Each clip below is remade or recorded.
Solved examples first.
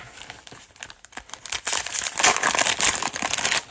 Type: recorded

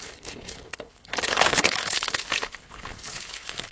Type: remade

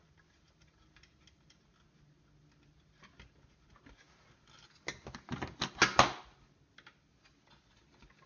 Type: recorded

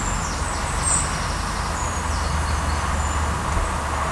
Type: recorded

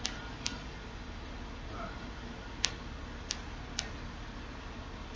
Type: recorded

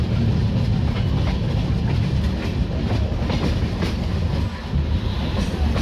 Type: recorded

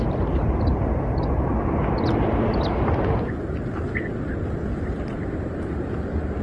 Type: recorded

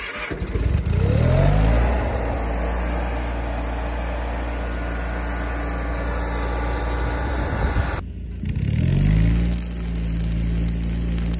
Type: recorded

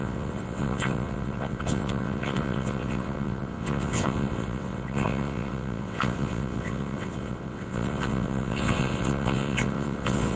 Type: remade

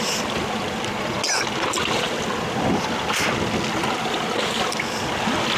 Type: recorded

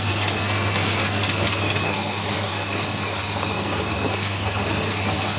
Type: remade